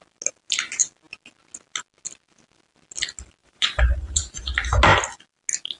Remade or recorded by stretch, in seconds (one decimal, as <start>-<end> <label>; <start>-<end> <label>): 0.0-3.4 recorded; 3.4-4.4 remade; 4.4-5.8 recorded